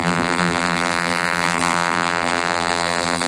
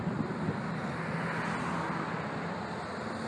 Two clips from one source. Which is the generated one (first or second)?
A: first